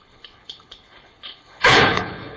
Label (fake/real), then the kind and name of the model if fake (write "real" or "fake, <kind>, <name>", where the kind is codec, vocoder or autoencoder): fake, codec, HILCodec